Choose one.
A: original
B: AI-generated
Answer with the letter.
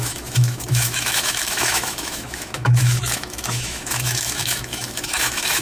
B